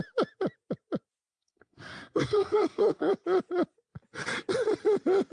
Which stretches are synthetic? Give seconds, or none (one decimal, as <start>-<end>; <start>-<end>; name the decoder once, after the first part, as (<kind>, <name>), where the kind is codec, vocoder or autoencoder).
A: 1.3-3.1 (codec, SNAC)